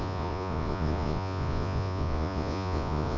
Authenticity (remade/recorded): remade